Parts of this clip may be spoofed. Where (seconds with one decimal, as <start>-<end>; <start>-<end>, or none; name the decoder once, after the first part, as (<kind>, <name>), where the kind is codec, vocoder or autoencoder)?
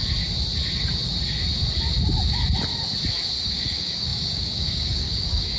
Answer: 3.4-5.6 (codec, DAC)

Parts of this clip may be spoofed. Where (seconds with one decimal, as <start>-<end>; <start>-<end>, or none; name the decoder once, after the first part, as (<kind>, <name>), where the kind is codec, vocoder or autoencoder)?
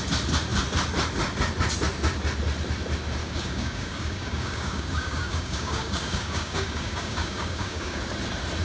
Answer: 3.2-8.0 (codec, DAC)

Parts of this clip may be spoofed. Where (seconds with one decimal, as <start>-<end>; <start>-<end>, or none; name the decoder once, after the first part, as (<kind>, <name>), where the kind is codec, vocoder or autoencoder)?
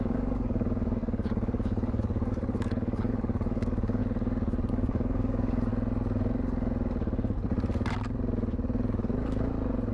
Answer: 0.0-4.0 (codec, DAC); 4.7-5.7